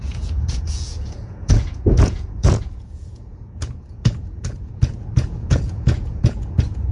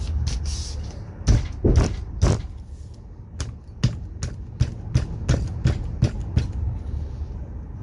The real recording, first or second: second